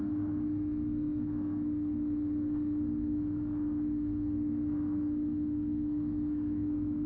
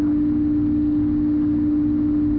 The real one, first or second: second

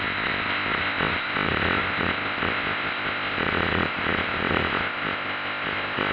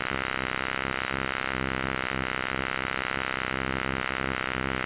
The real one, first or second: second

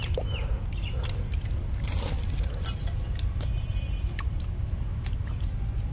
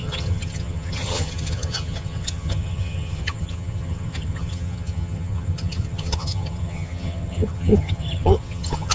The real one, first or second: first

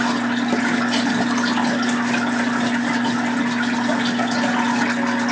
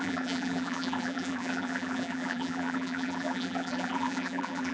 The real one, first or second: first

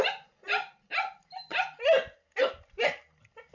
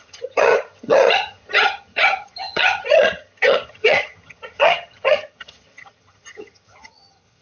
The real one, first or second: first